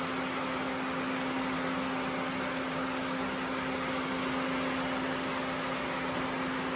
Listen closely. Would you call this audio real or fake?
real